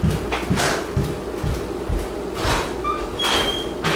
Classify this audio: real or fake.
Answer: real